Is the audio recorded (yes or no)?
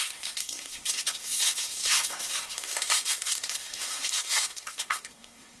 no